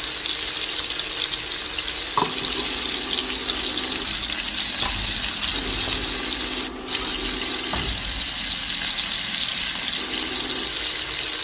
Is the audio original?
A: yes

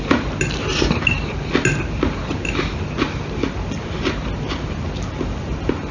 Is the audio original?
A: yes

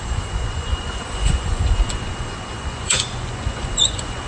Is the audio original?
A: no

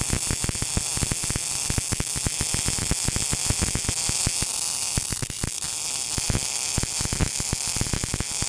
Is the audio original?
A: yes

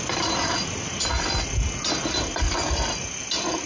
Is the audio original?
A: yes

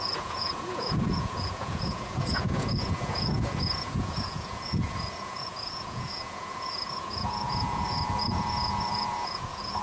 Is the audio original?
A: no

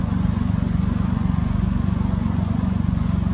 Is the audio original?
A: no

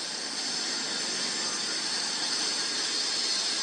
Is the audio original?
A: yes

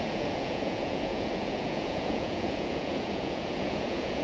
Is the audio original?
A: no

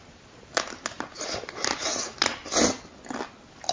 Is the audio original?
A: yes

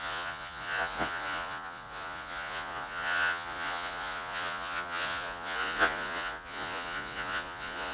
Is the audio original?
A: no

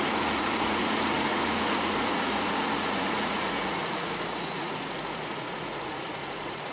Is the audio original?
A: no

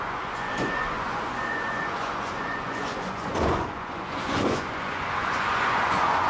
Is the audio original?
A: no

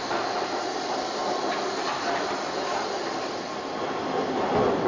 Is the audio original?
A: yes